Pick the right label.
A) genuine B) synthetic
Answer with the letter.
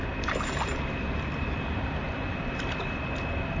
A